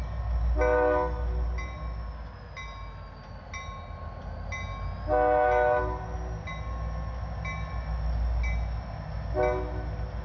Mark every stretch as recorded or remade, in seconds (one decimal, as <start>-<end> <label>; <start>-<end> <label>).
0.0-10.2 recorded